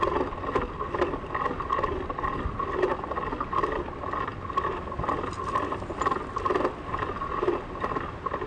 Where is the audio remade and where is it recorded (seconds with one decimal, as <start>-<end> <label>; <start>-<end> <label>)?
0.0-8.5 recorded